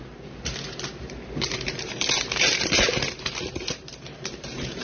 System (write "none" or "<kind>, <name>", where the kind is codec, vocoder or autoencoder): vocoder, BigVGAN v2